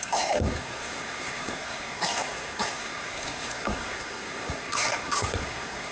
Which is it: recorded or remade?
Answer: remade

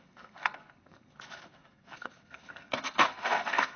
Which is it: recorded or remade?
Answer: remade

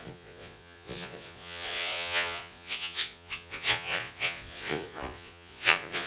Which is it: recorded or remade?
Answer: remade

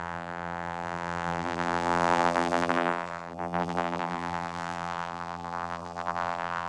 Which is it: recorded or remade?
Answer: remade